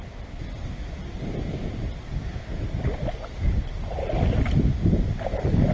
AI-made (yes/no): no